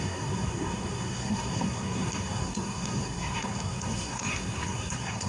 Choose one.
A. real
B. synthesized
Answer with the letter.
B